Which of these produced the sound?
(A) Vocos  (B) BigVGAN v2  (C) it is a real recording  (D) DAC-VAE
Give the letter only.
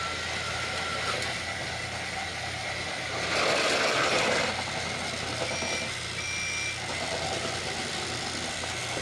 C